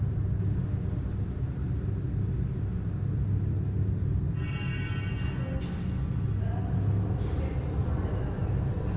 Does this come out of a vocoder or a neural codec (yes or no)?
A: no